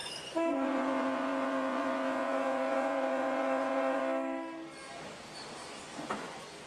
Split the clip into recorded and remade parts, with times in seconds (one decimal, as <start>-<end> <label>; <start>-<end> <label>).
0.0-4.0 remade; 4.0-5.6 recorded; 5.6-6.7 remade